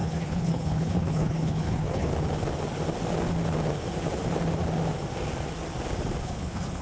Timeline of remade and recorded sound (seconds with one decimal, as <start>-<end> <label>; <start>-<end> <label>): 0.0-2.1 remade; 2.1-6.2 recorded; 6.2-6.8 remade